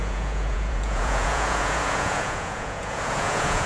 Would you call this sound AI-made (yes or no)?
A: yes